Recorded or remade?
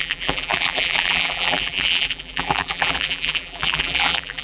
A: remade